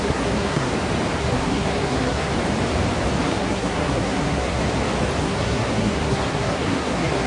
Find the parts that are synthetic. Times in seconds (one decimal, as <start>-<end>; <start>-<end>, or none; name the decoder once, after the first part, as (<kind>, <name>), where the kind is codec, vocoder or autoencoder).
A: 0.0-0.7 (codec, SNAC); 1.2-2.3; 3.2-4.6; 5.2-7.3